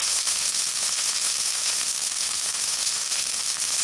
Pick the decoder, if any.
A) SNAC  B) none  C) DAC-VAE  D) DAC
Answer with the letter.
C